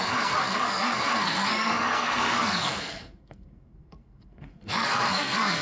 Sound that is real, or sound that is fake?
fake